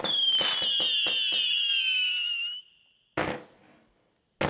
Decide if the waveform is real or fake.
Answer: real